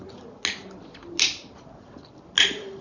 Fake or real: real